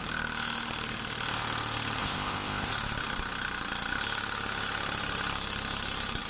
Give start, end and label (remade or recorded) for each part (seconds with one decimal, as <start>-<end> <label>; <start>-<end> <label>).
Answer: 0.0-2.0 recorded; 2.0-2.7 remade; 2.7-6.3 recorded